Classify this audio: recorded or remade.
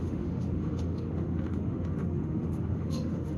remade